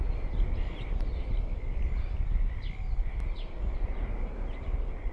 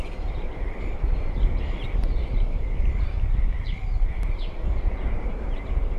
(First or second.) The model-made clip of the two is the second